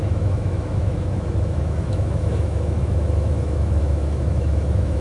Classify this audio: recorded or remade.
remade